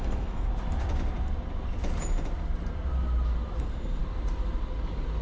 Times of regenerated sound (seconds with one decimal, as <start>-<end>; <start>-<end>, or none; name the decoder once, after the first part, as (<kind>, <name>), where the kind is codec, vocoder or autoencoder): 0.0-0.5 (codec, SNAC); 3.6-4.0